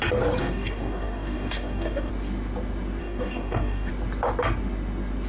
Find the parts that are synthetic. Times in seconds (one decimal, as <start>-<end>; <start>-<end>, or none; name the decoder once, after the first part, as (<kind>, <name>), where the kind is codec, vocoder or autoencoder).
0.4-2.1 (codec, DAC); 3.0-3.9